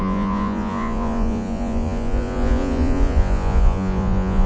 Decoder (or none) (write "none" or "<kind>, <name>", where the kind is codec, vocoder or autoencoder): vocoder, Vocos